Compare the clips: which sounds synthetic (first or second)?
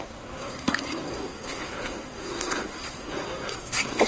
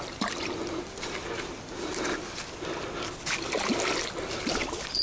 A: first